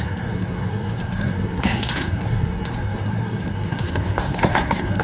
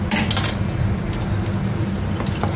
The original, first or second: second